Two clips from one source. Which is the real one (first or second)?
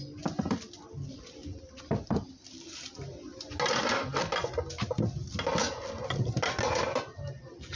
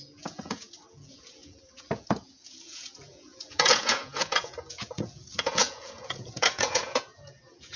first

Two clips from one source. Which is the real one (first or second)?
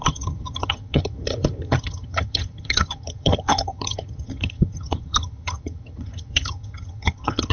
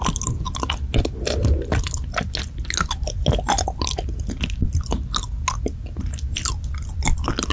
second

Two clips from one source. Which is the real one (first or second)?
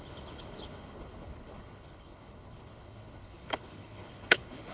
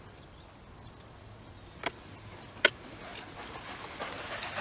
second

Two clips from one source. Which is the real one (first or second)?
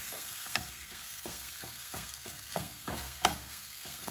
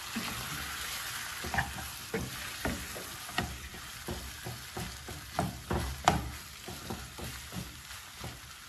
second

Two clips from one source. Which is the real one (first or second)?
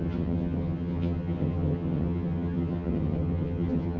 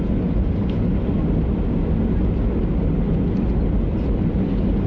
second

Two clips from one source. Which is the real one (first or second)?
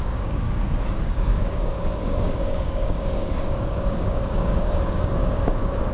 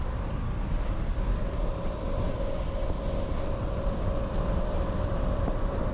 second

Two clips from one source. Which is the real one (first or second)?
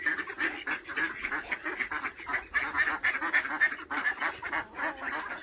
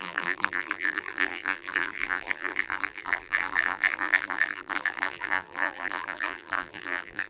first